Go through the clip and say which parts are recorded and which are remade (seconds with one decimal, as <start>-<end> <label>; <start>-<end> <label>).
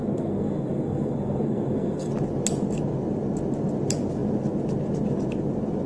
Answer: 0.0-2.1 remade; 2.1-5.9 recorded